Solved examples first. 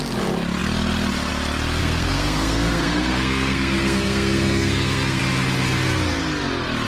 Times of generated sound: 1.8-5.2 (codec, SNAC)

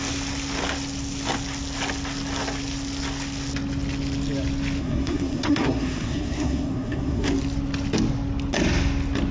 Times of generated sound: 4.8-7.3 (codec, SNAC)

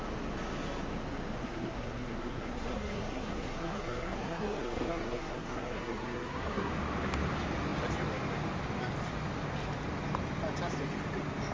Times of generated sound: 1.4-6.7 (codec, SNAC)

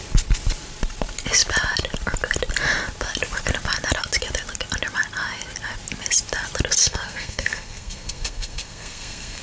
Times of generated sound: 6.8-9.4 (codec, SNAC)

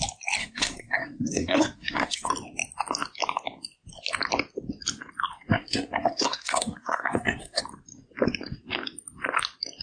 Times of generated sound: 0.4-2.3 (codec, SNAC); 5.5-7.6

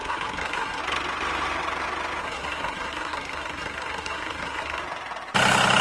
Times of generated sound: 0.0-0.8 (codec, SNAC); 2.2-4.8